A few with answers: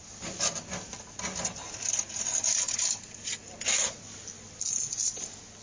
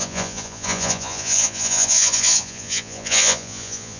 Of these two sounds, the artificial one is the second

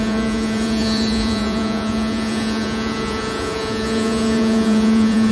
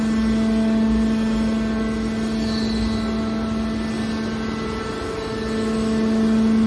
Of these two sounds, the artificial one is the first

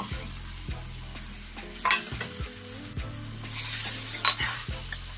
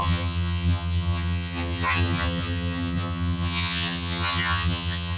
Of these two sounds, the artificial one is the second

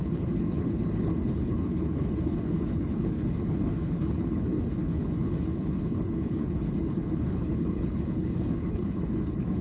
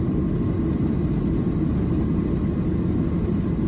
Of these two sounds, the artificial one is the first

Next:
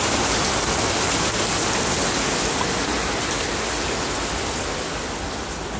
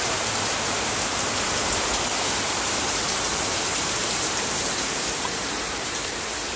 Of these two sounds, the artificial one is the second